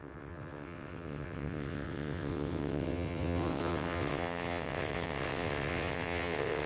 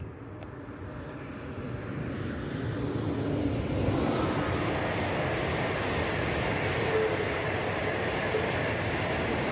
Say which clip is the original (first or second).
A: second